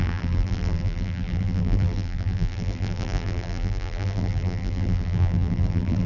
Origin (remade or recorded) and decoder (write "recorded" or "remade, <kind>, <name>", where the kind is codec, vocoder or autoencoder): remade, vocoder, BigVGAN v2